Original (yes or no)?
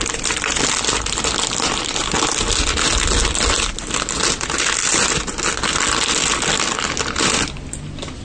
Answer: yes